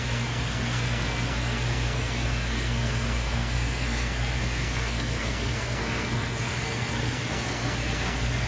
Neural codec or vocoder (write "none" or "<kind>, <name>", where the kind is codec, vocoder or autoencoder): codec, SNAC